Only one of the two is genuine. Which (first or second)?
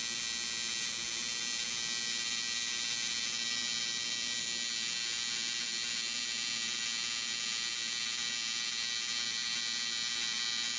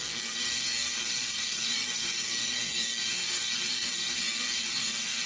first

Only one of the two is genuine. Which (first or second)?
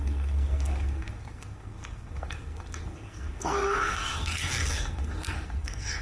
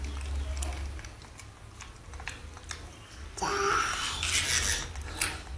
second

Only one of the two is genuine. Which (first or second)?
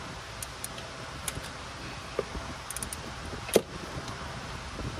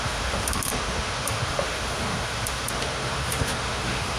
first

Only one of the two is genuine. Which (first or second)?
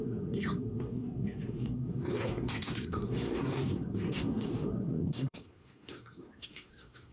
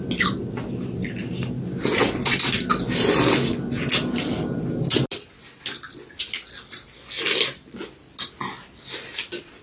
second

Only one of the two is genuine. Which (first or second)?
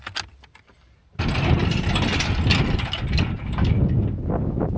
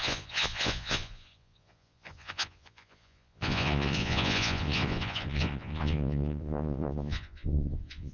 first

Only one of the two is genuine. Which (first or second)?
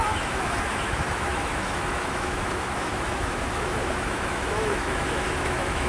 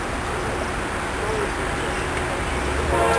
second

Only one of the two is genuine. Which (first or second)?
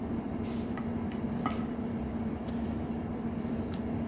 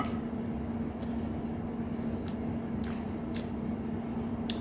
second